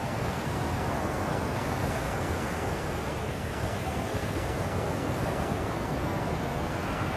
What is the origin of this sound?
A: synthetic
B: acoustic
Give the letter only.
A